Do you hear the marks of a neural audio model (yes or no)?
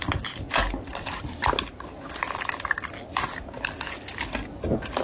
no